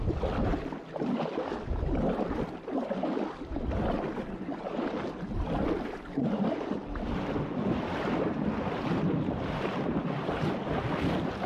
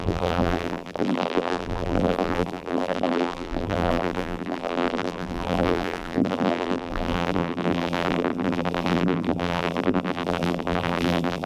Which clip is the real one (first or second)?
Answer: first